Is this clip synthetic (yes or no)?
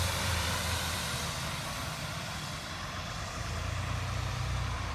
yes